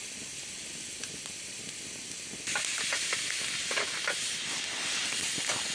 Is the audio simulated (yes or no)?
no